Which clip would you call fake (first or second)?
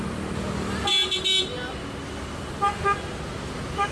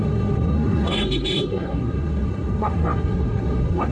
second